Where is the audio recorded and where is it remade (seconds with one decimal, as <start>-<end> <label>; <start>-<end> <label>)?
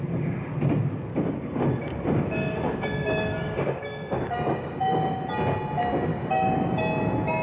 0.0-1.1 recorded; 1.1-5.2 remade; 5.2-6.1 recorded; 6.1-6.7 remade; 6.7-7.4 recorded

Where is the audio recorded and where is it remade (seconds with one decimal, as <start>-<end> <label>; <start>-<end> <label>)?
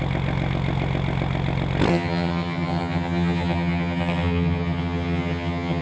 0.0-1.9 recorded; 1.9-5.8 remade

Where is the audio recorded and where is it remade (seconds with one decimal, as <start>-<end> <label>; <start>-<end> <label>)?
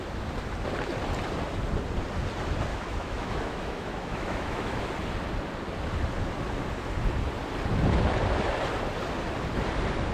0.0-2.7 recorded; 2.7-4.8 remade; 4.8-10.1 recorded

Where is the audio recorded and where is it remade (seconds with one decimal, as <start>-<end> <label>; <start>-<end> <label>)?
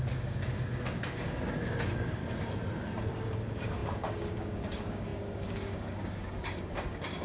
0.0-2.2 remade; 2.2-3.1 recorded; 3.1-7.2 remade